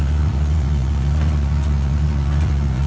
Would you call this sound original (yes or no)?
no